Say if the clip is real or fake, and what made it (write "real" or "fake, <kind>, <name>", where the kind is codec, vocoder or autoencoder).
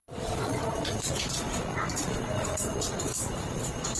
fake, vocoder, Vocos